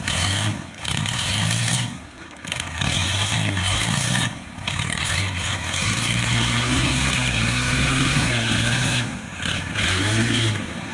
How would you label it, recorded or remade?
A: remade